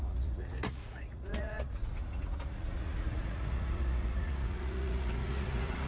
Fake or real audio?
fake